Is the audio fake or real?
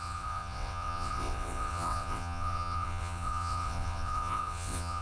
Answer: fake